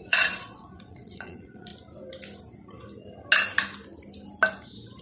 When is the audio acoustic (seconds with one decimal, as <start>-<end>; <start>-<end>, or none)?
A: 1.7-5.0